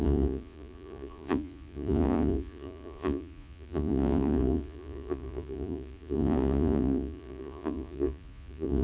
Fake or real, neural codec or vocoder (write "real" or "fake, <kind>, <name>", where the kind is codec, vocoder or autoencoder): fake, vocoder, Vocos